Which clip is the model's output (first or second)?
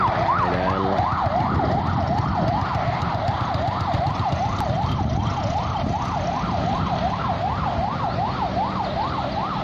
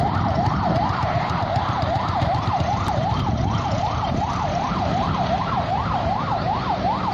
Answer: second